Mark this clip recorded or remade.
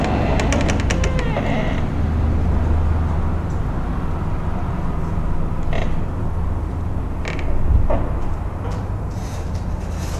recorded